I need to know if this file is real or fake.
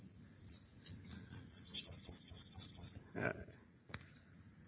fake